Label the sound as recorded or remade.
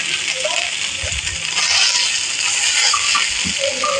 recorded